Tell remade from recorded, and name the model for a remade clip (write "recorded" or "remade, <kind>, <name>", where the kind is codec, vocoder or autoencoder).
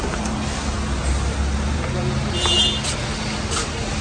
recorded